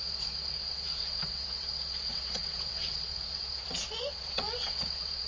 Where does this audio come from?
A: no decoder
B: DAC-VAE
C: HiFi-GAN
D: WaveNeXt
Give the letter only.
D